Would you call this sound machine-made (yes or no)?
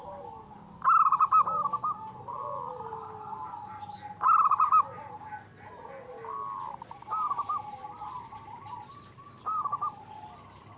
no